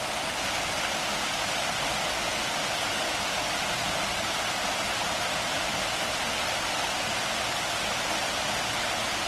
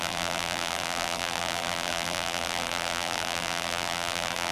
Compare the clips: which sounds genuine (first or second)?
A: first